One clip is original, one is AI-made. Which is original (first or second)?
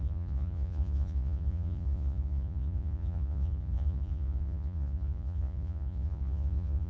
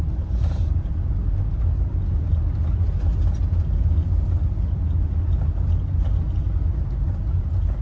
second